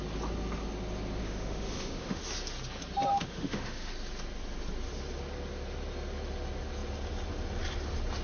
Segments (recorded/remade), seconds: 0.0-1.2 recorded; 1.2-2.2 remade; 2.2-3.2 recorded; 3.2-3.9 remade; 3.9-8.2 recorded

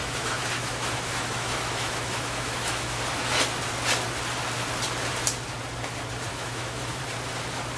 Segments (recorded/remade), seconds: 0.0-3.0 remade; 3.0-6.3 recorded; 6.3-7.0 remade; 7.0-7.8 recorded